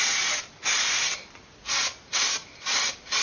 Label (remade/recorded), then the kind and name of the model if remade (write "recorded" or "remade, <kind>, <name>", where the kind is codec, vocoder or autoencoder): recorded